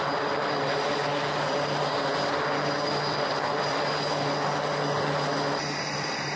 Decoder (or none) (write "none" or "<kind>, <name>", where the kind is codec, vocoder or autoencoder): none